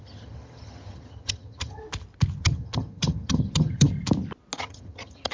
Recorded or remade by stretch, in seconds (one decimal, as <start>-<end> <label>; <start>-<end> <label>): 0.0-1.8 remade; 1.8-2.4 recorded; 2.4-3.9 remade; 3.9-4.6 recorded; 4.6-5.3 remade